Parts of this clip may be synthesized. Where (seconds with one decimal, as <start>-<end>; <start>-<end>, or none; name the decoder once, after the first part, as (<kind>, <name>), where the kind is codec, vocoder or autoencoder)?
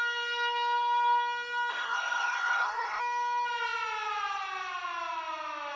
1.7-3.0 (codec, SNAC)